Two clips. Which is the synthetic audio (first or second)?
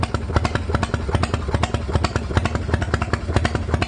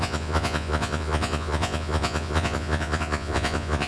second